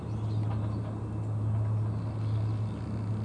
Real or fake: real